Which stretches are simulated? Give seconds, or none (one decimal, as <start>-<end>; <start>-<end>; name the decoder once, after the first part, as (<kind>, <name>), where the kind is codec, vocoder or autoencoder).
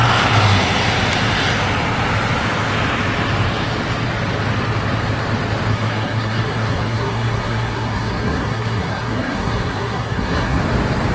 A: 5.7-10.6 (codec, SNAC)